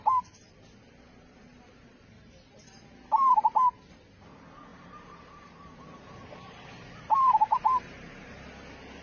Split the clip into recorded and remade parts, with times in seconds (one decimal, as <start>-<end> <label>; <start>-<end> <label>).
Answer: 0.0-1.5 recorded; 1.5-3.4 remade; 3.4-4.7 recorded; 4.7-8.3 remade; 8.3-9.0 recorded